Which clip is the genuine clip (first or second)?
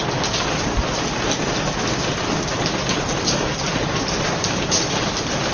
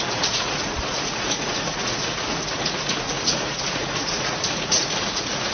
first